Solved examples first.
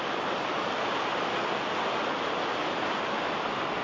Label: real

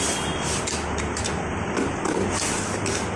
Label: real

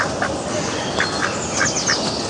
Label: real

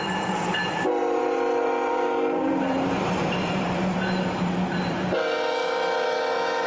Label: fake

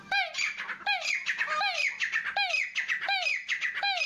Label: real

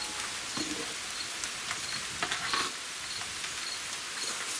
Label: real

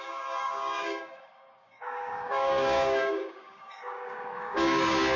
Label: fake